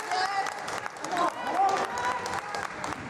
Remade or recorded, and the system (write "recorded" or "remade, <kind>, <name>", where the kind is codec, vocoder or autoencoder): recorded